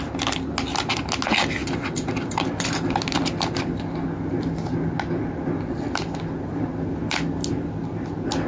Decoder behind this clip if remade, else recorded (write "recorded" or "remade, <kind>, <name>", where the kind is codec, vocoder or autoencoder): recorded